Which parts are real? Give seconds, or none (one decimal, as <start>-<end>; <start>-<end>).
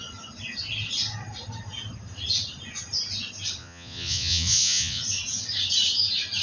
0.0-3.6; 5.0-6.4